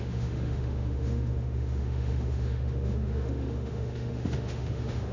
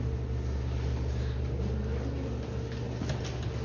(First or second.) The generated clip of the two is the first